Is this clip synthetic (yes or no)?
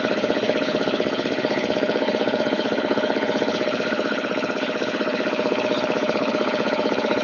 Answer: yes